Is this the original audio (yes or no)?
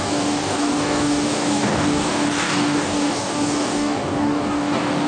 no